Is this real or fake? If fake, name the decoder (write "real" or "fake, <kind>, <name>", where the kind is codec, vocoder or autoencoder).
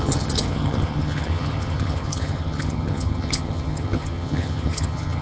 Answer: fake, vocoder, HiFi-GAN